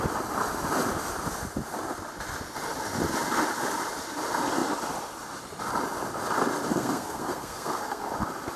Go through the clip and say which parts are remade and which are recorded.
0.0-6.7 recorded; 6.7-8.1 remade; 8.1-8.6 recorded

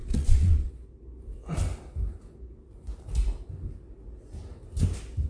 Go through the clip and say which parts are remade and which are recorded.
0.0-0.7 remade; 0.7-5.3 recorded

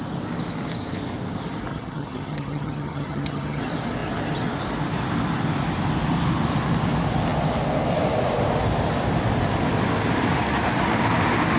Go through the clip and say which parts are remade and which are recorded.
0.0-1.7 recorded; 1.7-3.6 remade; 3.6-11.6 recorded

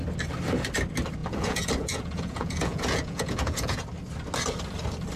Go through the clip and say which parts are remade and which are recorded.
0.0-1.2 recorded; 1.2-3.8 remade; 3.8-5.2 recorded

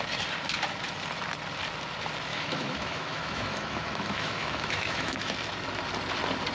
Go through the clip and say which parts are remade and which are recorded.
0.0-2.3 recorded; 2.3-5.3 remade; 5.3-6.5 recorded

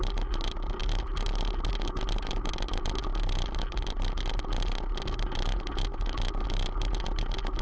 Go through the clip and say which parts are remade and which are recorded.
0.0-7.6 recorded